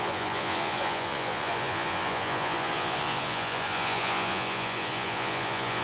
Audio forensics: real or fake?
fake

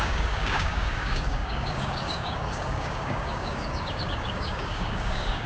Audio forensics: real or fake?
fake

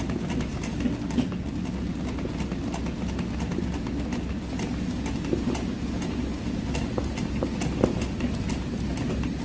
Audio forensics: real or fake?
real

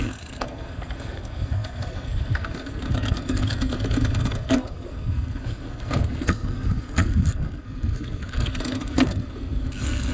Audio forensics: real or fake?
fake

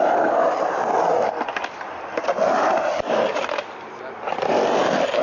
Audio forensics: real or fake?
real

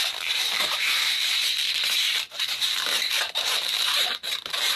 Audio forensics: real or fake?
fake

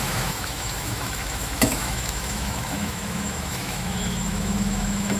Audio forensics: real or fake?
fake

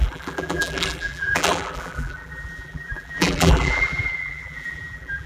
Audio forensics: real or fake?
fake